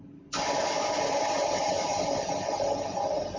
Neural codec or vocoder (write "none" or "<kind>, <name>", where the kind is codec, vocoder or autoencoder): none